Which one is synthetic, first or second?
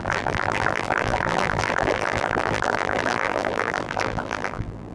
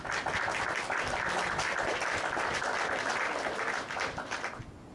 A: first